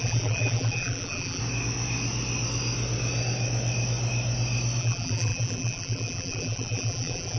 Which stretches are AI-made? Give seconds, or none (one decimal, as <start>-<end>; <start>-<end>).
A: 0.0-1.4; 4.8-7.4